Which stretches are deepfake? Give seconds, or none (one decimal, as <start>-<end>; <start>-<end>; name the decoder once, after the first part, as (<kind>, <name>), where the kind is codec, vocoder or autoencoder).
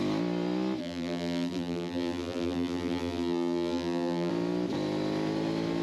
0.8-4.3 (vocoder, BigVGAN v2)